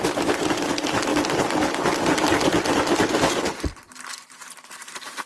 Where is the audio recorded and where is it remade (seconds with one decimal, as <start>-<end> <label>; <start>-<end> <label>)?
0.0-5.3 recorded